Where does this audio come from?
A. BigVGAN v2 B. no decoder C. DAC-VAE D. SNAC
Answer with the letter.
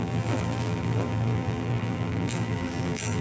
A